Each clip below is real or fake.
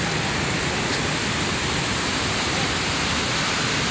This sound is real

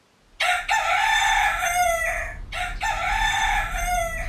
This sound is real